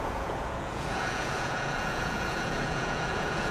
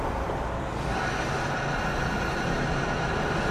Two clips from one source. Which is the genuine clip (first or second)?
second